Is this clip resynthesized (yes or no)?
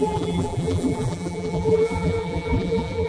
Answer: yes